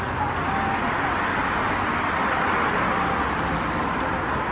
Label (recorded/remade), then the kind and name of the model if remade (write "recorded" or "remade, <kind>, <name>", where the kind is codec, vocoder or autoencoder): recorded